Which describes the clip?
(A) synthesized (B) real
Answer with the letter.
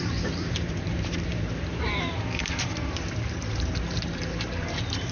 A